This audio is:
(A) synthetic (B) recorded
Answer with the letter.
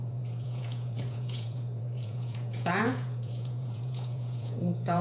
A